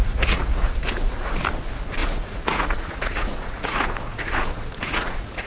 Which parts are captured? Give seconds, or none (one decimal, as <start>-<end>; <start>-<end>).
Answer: 1.4-2.0